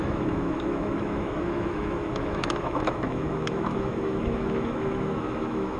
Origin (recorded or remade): remade